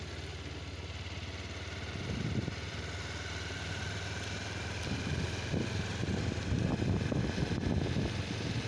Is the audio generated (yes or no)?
no